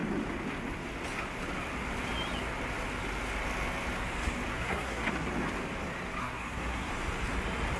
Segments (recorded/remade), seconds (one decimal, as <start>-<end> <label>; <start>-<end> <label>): 0.0-4.5 recorded; 4.5-5.1 remade; 5.1-6.2 recorded; 6.2-6.9 remade; 6.9-7.8 recorded